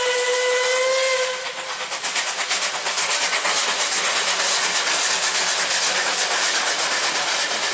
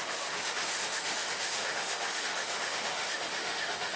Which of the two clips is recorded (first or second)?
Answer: first